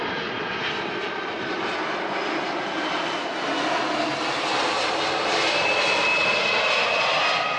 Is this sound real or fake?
real